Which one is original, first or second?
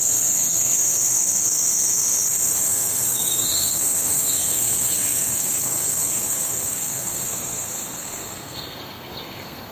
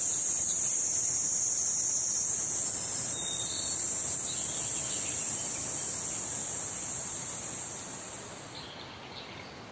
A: second